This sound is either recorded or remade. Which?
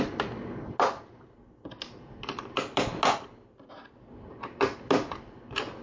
recorded